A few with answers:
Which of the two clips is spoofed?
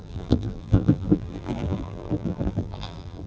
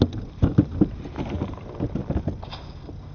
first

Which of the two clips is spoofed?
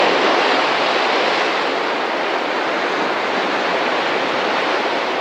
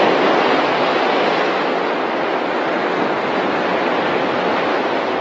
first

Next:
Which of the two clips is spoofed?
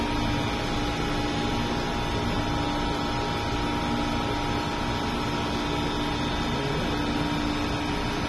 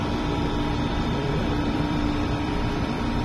second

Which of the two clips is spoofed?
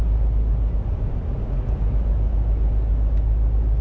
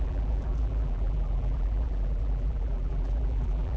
second